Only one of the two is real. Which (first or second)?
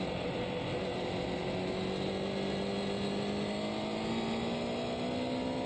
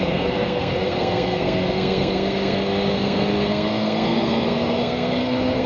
first